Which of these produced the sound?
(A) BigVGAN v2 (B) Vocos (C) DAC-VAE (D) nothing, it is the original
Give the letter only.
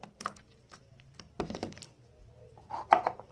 A